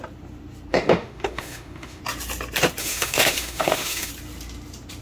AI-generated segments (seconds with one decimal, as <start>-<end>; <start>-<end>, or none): 0.7-2.0; 2.8-4.1